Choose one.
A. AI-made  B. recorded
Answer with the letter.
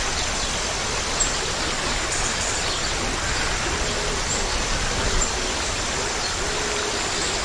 B